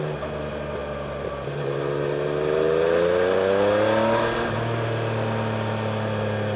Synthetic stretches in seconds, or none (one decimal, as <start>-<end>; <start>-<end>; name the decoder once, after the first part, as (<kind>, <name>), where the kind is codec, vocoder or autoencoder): none